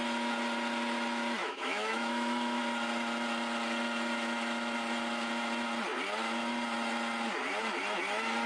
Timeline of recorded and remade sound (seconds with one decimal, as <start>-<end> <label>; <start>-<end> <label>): 0.0-1.4 recorded; 1.4-2.6 remade; 2.6-8.5 recorded